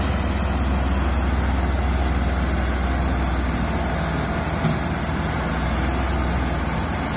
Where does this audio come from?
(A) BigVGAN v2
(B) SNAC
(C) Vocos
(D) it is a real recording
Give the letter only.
D